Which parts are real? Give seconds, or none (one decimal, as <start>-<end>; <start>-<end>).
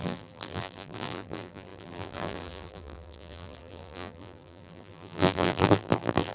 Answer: none